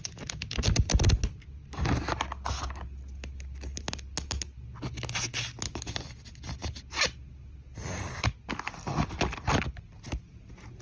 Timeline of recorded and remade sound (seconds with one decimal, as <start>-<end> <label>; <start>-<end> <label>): 0.0-10.8 recorded